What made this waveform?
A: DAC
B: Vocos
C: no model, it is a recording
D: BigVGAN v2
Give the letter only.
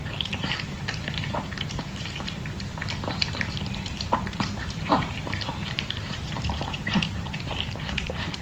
D